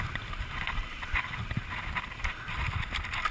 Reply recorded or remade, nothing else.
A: recorded